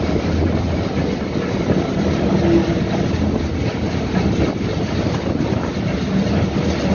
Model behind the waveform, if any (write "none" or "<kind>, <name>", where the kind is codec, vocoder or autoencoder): none